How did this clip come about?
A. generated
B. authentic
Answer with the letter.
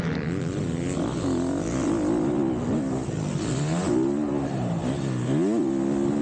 B